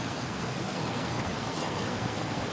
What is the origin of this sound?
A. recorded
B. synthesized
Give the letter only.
B